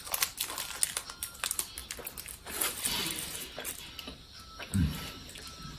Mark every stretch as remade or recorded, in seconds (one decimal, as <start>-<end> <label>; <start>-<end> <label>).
0.0-5.8 recorded